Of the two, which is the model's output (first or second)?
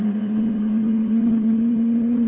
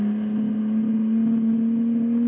first